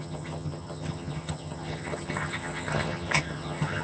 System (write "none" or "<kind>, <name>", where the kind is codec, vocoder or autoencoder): vocoder, HiFi-GAN